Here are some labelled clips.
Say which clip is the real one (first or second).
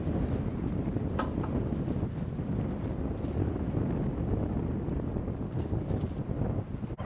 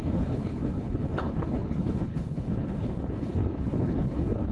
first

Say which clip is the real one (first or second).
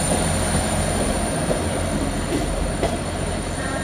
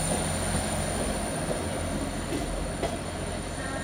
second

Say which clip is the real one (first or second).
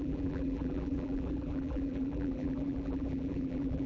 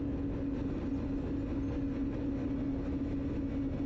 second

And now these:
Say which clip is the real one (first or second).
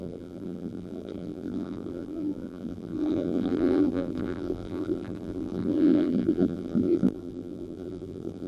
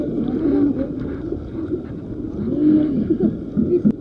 second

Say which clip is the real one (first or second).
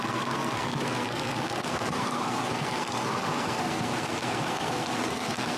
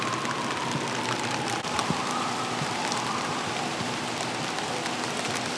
second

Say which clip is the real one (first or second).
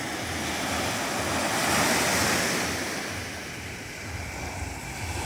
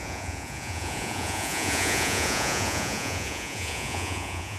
first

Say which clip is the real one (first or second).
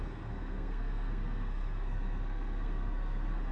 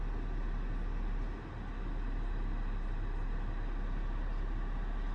second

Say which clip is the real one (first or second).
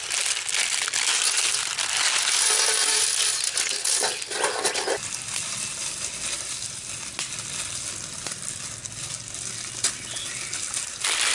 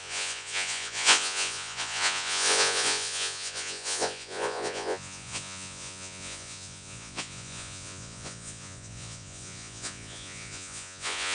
first